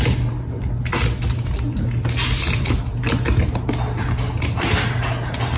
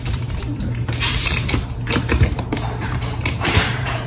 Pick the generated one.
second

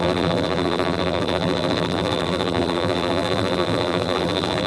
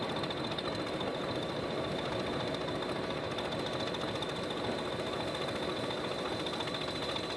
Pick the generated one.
first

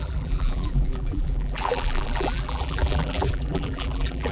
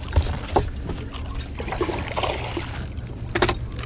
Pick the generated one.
first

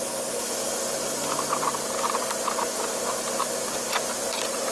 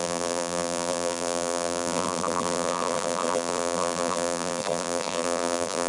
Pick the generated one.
second